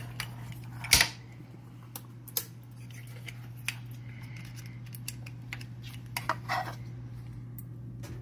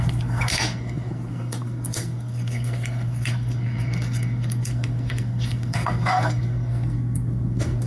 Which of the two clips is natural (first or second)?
first